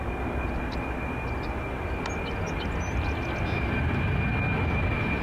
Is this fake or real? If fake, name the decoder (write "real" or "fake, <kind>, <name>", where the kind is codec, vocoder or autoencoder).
real